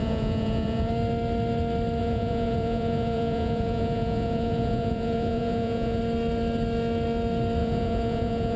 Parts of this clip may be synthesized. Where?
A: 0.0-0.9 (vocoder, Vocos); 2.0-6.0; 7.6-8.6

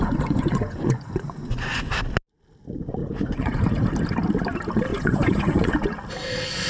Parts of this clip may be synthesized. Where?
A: 0.0-1.9 (vocoder, Vocos); 3.0-3.6; 4.9-5.7